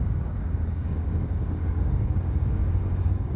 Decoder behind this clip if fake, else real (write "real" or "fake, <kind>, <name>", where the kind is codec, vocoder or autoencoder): fake, codec, DAC